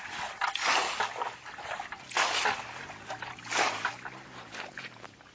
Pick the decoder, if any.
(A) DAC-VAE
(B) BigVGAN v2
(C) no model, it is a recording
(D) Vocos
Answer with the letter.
C